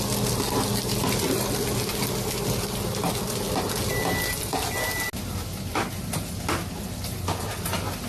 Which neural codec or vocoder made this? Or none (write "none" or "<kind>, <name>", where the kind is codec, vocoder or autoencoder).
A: none